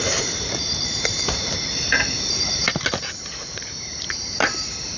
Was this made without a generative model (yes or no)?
no